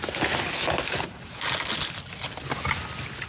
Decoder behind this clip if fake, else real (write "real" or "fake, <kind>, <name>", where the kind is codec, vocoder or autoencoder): real